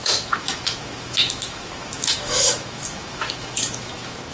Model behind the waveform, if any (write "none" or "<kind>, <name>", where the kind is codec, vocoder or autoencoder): autoencoder, DAC-VAE